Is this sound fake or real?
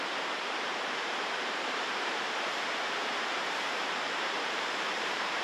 fake